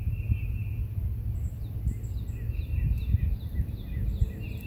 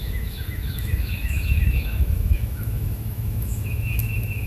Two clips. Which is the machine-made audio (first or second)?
second